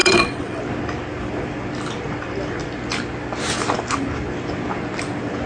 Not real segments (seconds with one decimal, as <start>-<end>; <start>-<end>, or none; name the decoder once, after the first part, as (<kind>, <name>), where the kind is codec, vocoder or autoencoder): 0.0-0.6 (vocoder, WaveNeXt)